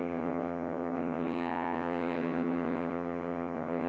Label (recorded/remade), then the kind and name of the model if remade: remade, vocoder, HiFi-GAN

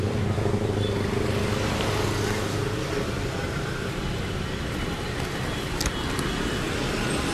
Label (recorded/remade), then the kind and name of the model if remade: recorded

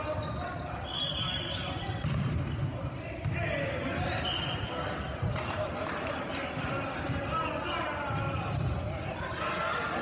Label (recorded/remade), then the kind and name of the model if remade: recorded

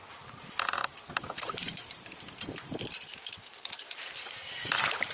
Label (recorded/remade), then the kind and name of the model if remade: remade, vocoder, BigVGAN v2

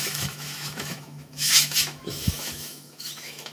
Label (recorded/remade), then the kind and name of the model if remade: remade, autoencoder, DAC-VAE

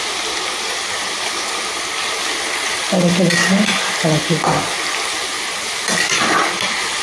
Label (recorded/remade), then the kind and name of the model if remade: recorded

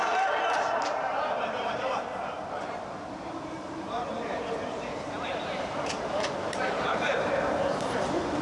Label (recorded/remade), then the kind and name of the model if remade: remade, vocoder, BigVGAN v2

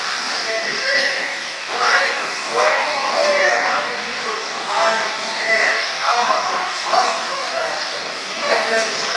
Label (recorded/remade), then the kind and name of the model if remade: remade, codec, DAC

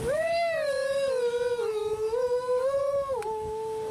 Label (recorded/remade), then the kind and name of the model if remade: remade, autoencoder, DAC-VAE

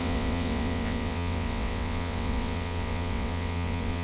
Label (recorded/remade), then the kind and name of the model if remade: remade, vocoder, WaveNeXt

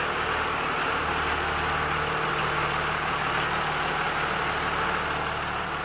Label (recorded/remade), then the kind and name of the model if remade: recorded